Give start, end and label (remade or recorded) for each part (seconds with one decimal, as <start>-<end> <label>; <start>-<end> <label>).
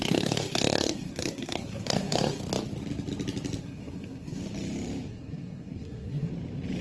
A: 0.0-2.4 remade; 2.4-3.6 recorded; 3.6-4.4 remade; 4.4-5.1 recorded; 5.1-6.3 remade; 6.3-6.8 recorded